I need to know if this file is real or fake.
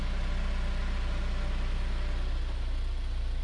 real